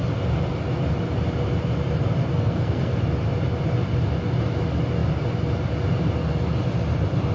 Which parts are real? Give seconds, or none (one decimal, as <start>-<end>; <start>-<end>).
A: 0.0-2.3; 3.0-7.3